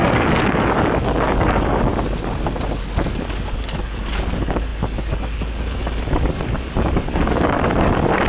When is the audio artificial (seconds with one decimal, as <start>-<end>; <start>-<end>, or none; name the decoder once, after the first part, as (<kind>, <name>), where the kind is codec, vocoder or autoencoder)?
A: 0.0-1.9 (codec, DAC); 3.1-8.3